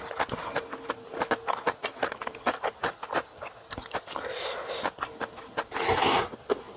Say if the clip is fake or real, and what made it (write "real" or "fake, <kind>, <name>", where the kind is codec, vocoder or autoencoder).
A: real